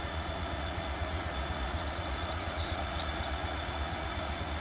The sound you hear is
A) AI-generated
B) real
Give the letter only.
A